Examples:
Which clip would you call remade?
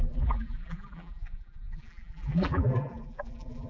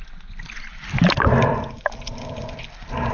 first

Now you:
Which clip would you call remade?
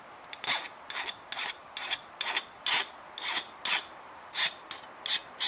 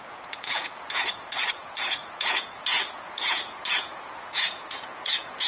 second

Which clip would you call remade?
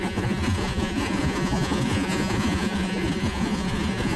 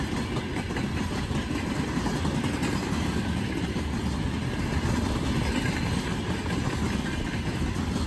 first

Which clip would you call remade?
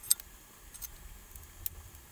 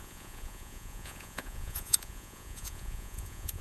second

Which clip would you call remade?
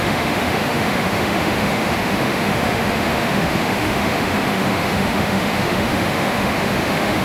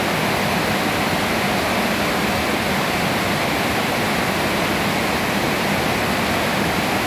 first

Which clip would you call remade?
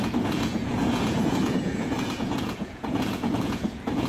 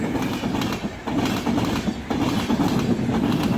first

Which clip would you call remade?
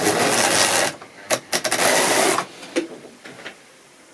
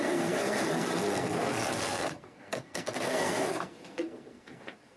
second